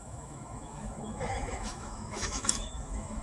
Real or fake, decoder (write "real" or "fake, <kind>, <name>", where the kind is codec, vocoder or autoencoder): fake, autoencoder, DAC-VAE